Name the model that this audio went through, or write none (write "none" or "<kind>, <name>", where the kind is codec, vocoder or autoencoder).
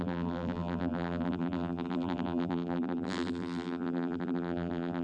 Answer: vocoder, BigVGAN v2